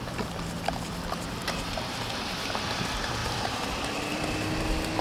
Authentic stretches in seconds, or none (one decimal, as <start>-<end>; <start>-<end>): 0.0-3.2; 4.6-5.0